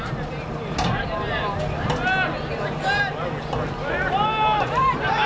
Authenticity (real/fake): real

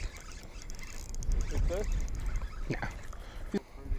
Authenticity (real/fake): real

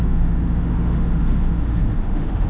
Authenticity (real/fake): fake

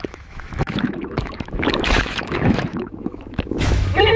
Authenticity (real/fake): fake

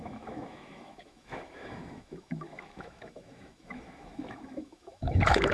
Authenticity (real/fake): fake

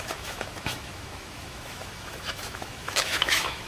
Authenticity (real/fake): fake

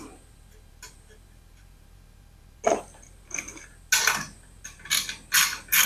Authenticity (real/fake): real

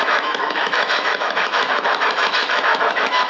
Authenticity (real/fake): fake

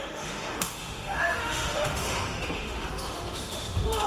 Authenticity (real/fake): fake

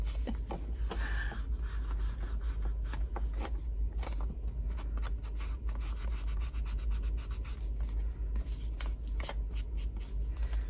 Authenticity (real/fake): real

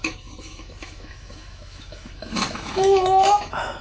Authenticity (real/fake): fake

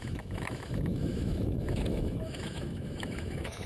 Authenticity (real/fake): fake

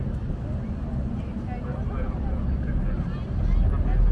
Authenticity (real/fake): real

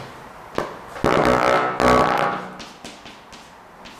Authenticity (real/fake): real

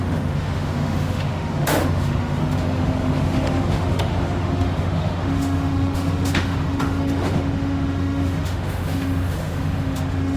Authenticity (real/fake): fake